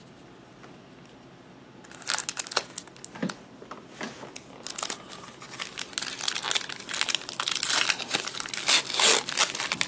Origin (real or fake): real